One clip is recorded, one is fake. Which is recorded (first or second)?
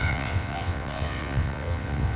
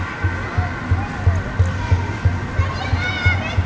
second